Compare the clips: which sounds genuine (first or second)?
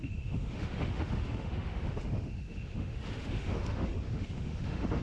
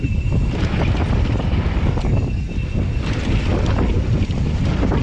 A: second